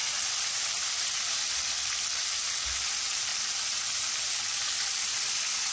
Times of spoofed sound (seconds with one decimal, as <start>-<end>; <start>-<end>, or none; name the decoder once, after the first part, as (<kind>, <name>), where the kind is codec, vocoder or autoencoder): none